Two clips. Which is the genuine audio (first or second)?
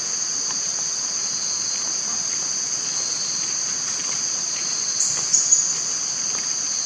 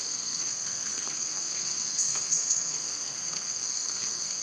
first